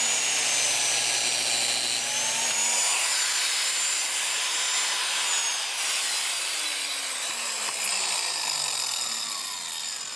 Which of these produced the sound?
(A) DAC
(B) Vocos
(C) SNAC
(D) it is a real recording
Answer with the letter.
D